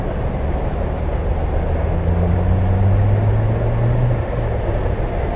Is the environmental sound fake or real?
real